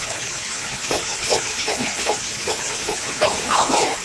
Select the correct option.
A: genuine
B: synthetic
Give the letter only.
B